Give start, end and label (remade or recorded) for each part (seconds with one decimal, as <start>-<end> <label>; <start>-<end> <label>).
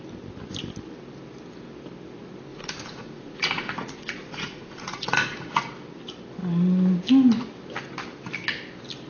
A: 0.0-2.5 recorded; 2.5-5.6 remade; 5.6-9.1 recorded